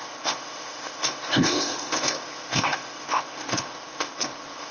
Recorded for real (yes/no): no